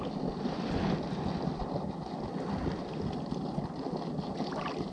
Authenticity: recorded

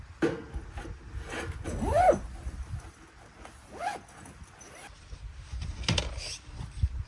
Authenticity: recorded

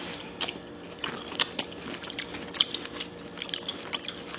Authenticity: recorded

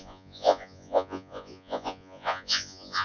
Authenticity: remade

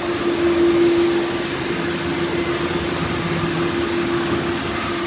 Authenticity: recorded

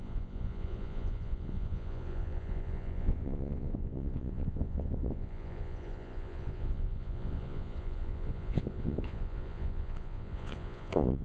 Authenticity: remade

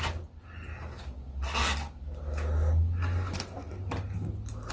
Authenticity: recorded